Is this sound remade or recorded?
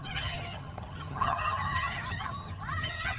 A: remade